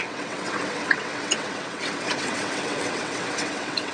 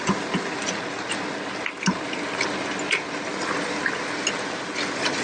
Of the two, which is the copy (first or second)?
first